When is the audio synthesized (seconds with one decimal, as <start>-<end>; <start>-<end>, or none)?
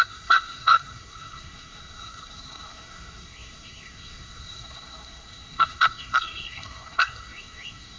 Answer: 0.0-8.0